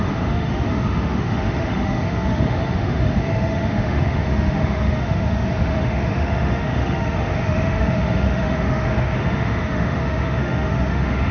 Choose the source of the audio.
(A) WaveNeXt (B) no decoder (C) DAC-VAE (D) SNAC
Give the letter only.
C